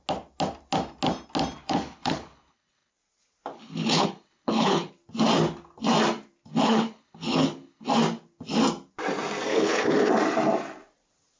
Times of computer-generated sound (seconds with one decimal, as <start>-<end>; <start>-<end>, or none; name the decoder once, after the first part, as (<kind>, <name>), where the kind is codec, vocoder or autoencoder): 1.6-2.9 (codec, HILCodec); 3.5-4.9; 6.5-7.9; 9.5-10.1